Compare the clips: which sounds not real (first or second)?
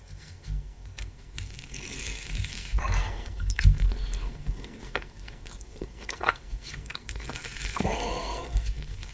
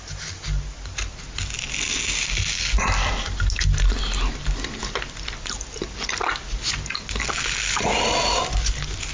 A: first